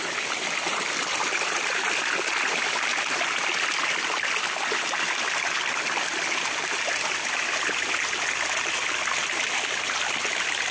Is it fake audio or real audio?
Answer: fake